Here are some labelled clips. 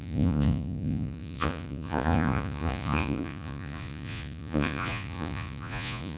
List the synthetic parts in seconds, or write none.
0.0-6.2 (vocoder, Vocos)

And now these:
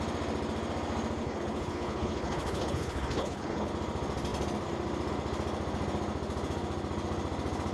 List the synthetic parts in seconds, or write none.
1.2-3.7 (codec, HILCodec)

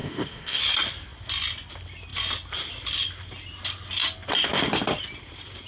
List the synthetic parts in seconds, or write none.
0.0-0.6 (codec, ZipCodec)